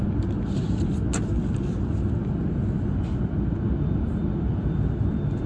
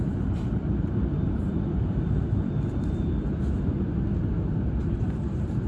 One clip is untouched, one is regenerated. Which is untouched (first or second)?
first